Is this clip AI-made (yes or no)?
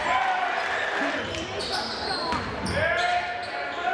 no